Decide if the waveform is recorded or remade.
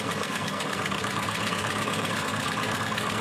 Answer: remade